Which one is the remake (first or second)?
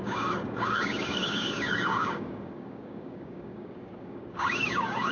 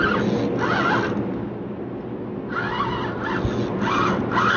first